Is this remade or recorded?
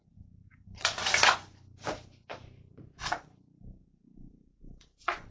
remade